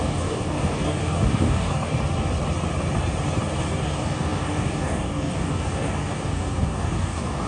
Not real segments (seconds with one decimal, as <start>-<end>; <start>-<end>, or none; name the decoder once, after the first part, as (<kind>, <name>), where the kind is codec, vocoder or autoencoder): 0.0-1.9 (codec, DAC); 3.6-7.5